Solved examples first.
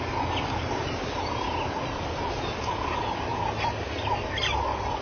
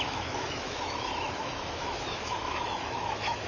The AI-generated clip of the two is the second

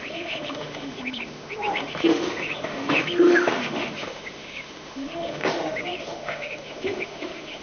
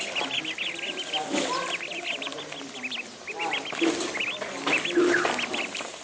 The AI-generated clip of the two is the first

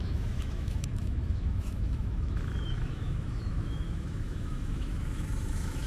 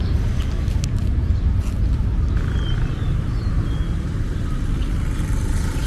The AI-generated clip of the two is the first